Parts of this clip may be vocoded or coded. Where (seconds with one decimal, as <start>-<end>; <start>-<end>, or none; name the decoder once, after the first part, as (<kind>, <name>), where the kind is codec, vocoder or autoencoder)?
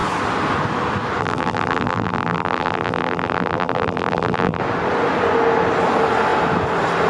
1.2-4.6 (vocoder, BigVGAN v2)